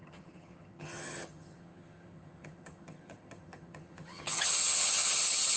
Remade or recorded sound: remade